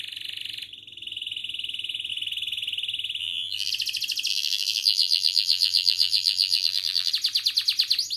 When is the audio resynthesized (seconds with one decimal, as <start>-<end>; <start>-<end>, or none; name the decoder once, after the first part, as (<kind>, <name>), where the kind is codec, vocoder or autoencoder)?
3.2-3.7 (vocoder, BigVGAN v2); 4.3-7.1